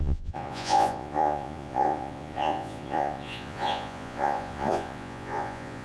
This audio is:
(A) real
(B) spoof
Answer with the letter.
B